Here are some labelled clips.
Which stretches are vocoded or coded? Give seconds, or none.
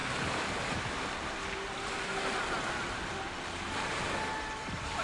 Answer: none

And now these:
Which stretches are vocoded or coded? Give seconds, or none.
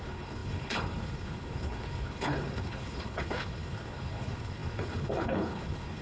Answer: 0.0-6.0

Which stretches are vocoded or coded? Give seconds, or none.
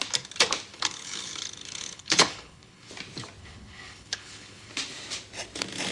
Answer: 0.7-2.9; 3.4-4.7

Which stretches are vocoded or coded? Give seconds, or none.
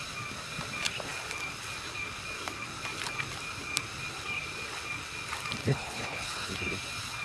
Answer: 5.6-6.5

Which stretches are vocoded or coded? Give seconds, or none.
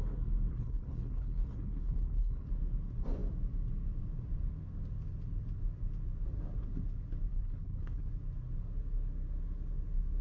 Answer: 0.5-2.5; 7.3-8.1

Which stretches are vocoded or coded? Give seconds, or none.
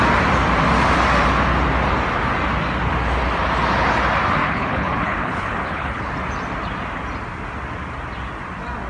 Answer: 4.4-6.1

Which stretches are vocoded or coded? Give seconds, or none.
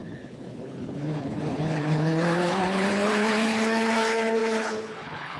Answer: 0.0-5.4